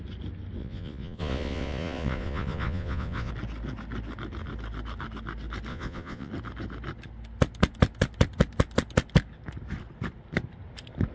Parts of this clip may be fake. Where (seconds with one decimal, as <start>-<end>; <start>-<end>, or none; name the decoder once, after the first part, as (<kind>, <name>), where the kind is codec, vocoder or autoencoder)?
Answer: 0.6-3.3 (vocoder, Vocos); 5.7-6.3